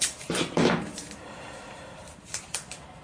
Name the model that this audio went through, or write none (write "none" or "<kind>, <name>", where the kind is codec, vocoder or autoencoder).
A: vocoder, BigVGAN v2